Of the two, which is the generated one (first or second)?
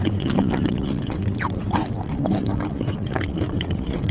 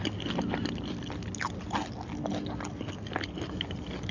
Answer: first